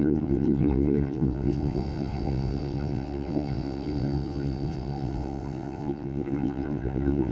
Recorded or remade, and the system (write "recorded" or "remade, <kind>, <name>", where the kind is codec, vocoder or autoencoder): remade, vocoder, WaveNeXt